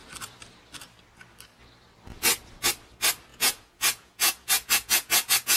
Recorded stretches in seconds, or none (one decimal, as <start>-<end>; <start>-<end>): 0.0-3.3